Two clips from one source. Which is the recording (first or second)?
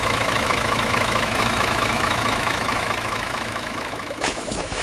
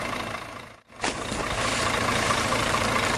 second